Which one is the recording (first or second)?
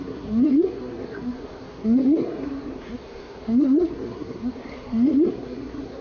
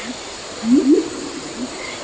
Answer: second